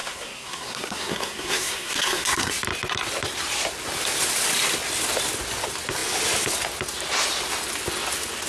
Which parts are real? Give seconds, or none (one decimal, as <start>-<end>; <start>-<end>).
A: 2.5-8.5